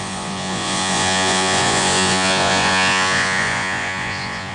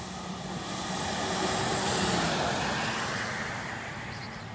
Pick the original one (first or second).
second